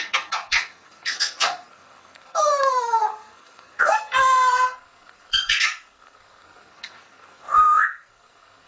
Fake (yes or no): yes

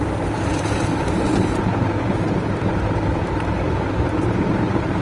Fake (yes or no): yes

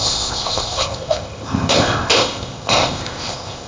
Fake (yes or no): yes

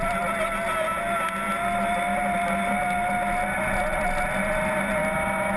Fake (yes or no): no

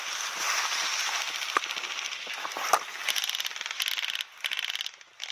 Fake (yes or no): no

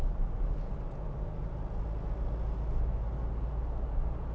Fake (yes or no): no